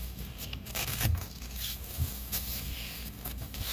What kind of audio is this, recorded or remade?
remade